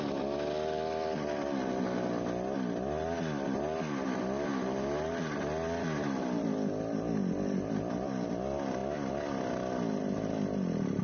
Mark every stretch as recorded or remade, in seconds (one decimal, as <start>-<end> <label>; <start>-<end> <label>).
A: 0.0-11.0 recorded